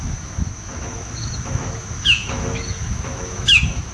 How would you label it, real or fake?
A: fake